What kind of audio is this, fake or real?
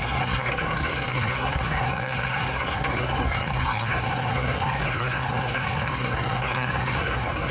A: fake